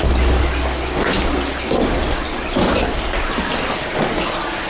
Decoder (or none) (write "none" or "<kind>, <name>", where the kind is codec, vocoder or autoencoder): none